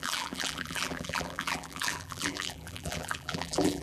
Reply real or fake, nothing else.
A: fake